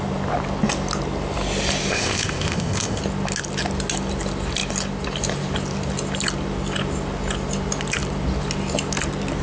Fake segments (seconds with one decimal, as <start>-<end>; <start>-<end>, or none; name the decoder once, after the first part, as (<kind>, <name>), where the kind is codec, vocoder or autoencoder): 1.9-3.0 (codec, ZipCodec)